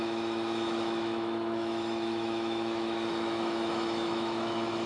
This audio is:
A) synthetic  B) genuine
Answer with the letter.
A